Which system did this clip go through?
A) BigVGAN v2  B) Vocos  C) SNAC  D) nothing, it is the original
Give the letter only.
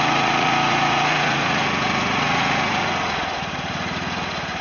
B